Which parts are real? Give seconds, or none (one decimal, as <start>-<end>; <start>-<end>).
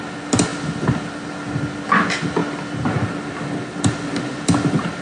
0.0-5.0